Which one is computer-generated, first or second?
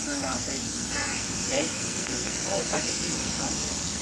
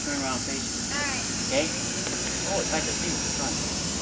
first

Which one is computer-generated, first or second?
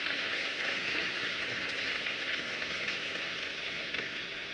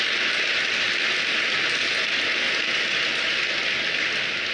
first